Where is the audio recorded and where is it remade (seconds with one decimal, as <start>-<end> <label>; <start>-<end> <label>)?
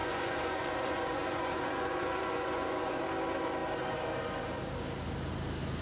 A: 0.0-3.0 remade; 3.0-5.8 recorded